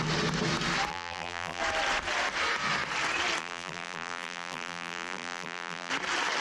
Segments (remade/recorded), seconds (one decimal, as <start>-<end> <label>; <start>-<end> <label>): 0.0-0.9 recorded; 0.9-1.6 remade; 1.6-3.4 recorded; 3.4-5.9 remade; 5.9-6.4 recorded